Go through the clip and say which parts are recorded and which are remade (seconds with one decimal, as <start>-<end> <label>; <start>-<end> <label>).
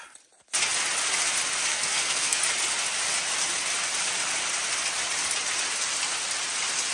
0.0-1.7 recorded; 1.7-2.4 remade; 2.4-6.9 recorded